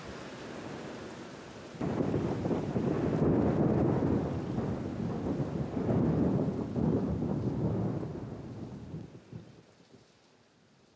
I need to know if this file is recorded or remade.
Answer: recorded